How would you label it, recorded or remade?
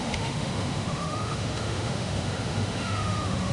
remade